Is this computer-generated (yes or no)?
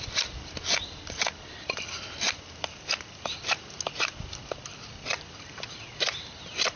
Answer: no